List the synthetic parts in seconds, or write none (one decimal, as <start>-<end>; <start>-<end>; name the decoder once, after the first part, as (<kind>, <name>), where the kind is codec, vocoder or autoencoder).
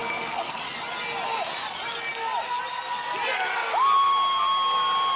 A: 0.0-0.6 (codec, SNAC)